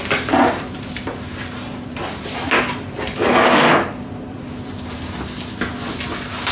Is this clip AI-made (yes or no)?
no